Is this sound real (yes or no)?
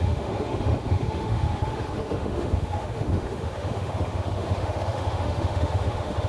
no